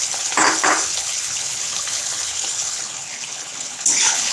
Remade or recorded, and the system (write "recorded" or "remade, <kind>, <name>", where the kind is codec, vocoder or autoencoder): remade, codec, HILCodec